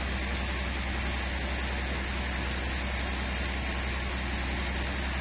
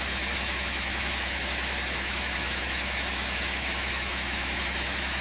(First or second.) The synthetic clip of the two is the second